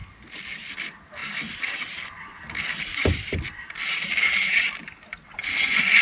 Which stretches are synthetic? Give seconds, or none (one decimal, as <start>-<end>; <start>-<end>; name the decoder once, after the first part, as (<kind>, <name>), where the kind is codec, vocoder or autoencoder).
5.4-6.0 (vocoder, Vocos)